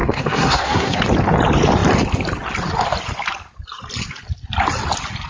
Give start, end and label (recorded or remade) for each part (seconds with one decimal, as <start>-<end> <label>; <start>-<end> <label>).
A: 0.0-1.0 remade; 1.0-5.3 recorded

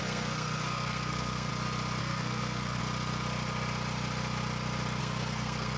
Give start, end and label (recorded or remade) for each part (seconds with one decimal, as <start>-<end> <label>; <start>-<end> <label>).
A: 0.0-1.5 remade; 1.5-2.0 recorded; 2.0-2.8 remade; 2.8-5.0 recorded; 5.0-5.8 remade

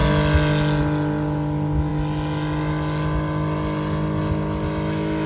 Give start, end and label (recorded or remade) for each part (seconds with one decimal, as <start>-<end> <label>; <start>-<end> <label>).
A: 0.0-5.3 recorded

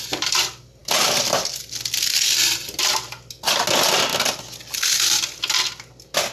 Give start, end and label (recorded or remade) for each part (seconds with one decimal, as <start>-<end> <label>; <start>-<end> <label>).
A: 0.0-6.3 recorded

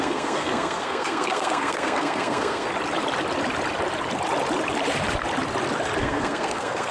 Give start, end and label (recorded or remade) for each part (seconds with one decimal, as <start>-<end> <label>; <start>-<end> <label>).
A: 0.0-2.7 remade; 2.7-6.0 recorded; 6.0-6.9 remade

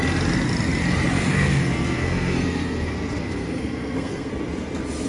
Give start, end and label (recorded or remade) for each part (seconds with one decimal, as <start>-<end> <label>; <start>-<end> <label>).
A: 0.0-1.2 recorded; 1.2-4.3 remade; 4.3-5.1 recorded

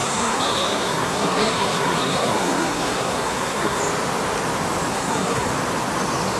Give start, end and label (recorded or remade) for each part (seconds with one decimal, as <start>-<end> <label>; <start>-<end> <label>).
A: 0.0-3.8 remade; 3.8-4.9 recorded; 4.9-5.5 remade; 5.5-6.4 recorded